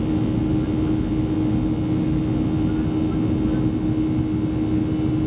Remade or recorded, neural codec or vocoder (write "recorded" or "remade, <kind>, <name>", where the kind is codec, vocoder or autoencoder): recorded